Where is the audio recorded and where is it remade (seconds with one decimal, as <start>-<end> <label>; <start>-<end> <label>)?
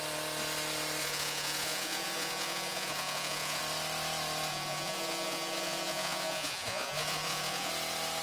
0.0-1.0 recorded; 1.0-3.6 remade; 3.6-4.5 recorded; 4.5-7.7 remade; 7.7-8.2 recorded